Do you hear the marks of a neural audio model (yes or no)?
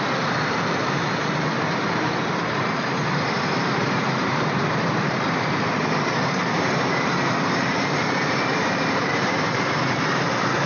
yes